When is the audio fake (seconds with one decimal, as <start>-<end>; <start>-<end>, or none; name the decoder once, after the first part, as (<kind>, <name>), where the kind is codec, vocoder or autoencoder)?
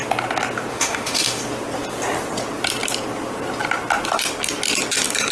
0.7-1.4 (autoencoder, DAC-VAE)